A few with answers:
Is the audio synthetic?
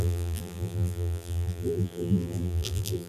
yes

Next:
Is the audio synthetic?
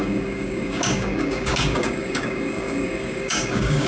yes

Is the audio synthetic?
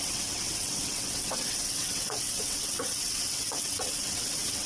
yes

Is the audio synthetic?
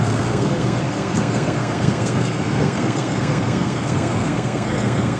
yes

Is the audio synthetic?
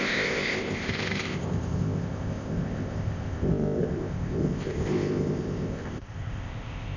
yes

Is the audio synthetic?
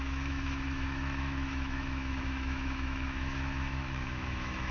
yes